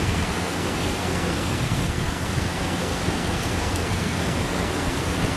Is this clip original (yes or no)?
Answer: no